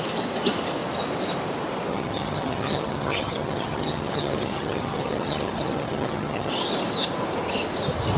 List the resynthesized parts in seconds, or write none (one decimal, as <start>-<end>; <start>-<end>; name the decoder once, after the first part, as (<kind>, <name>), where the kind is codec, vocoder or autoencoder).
1.9-6.5 (vocoder, HiFi-GAN)